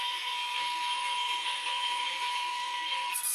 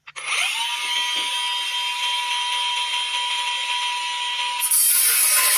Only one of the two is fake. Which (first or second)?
first